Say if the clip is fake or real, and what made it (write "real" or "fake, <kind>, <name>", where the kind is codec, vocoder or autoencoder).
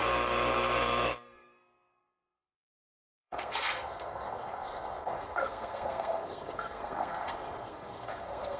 fake, codec, SNAC